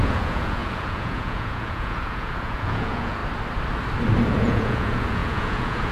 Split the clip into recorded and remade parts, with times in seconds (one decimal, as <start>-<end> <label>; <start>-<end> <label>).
0.0-3.2 remade; 3.2-4.3 recorded; 4.3-5.9 remade